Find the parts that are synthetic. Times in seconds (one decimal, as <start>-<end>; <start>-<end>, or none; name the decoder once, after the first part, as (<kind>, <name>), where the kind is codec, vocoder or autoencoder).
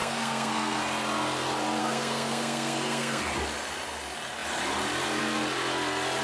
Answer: 0.0-0.8 (codec, SNAC); 1.8-3.2